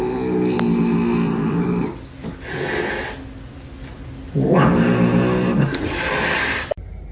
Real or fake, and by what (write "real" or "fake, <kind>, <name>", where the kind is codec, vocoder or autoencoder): real